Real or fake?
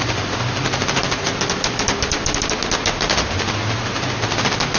real